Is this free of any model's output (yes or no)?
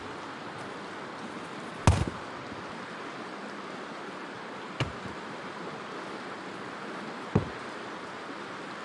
yes